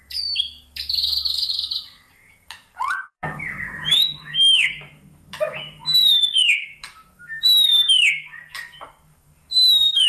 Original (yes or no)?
no